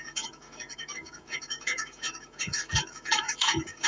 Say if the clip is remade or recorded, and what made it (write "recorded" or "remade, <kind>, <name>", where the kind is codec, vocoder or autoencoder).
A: remade, autoencoder, DAC-VAE